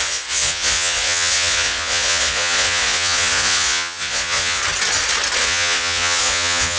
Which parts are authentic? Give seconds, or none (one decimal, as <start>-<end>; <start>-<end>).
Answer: 4.6-5.4